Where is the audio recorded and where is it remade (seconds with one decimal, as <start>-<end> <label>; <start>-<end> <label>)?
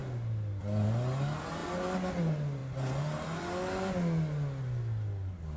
0.0-5.6 recorded